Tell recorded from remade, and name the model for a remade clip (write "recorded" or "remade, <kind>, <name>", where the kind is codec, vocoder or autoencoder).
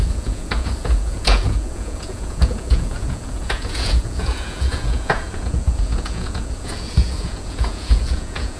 remade, vocoder, Vocos